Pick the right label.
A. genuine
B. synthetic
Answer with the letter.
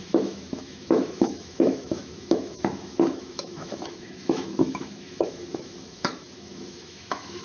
B